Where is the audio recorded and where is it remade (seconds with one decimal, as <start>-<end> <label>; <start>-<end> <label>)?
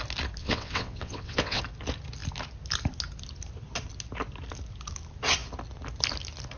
0.0-0.4 recorded; 0.4-1.6 remade; 1.6-6.6 recorded